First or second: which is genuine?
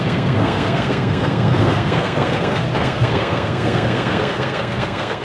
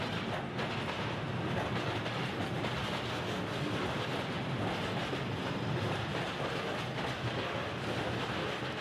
second